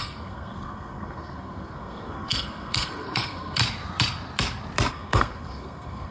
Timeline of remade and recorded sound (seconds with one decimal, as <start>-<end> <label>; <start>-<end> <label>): 0.0-3.6 remade; 3.6-4.9 recorded; 4.9-6.1 remade